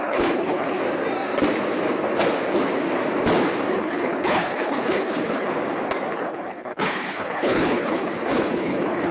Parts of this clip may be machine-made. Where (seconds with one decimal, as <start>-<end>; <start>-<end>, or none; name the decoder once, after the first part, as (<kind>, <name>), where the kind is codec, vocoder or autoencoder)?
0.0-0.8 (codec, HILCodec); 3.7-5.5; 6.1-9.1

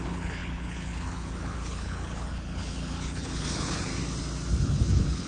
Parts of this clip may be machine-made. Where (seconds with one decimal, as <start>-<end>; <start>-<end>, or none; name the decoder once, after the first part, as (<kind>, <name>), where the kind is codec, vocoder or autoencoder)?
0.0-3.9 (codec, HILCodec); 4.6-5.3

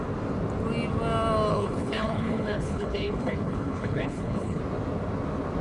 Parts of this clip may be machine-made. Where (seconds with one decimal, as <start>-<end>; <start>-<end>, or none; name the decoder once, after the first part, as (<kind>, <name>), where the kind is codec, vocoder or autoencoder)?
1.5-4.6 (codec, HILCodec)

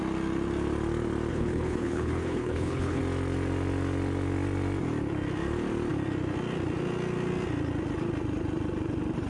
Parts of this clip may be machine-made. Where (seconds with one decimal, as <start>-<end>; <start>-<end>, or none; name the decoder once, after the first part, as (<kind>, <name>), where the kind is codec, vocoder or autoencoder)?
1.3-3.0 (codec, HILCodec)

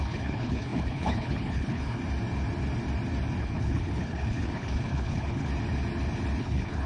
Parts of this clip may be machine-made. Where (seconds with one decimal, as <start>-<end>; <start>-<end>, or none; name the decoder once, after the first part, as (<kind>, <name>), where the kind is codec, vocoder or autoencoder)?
0.0-2.0 (codec, HILCodec); 3.4-5.5; 6.4-6.9